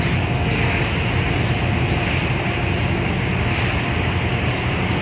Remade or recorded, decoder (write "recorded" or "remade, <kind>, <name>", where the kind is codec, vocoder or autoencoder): recorded